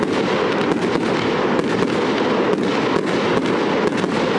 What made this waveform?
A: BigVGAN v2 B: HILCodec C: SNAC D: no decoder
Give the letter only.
D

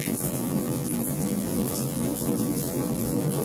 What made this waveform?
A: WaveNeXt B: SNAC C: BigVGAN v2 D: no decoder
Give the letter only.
C